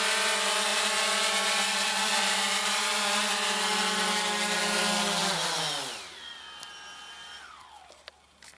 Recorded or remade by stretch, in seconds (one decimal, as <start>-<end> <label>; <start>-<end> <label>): 0.0-0.7 recorded; 0.7-3.3 remade; 3.3-8.6 recorded